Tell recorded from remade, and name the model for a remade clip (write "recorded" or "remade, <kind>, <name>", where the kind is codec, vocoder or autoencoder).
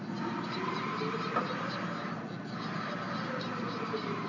recorded